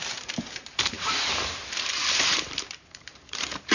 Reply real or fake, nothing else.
fake